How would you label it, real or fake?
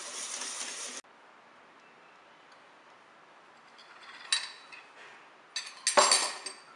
real